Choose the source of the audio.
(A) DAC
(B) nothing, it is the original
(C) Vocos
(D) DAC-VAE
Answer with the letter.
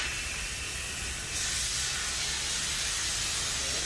B